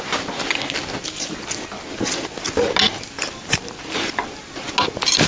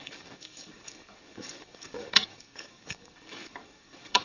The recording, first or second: first